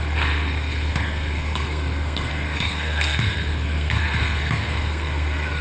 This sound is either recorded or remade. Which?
remade